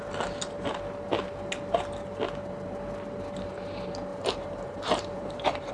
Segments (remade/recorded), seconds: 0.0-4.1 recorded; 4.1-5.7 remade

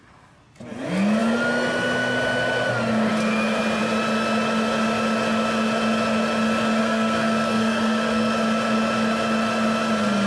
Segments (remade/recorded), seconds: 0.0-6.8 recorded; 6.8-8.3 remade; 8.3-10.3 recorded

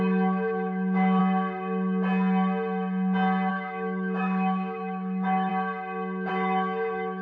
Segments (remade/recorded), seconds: 0.0-1.2 remade; 1.2-3.5 recorded; 3.5-5.5 remade; 5.5-6.3 recorded; 6.3-7.2 remade